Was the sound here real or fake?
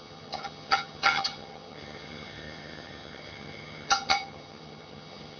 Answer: fake